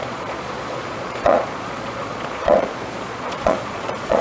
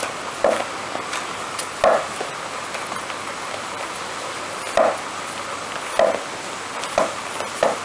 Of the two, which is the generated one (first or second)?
first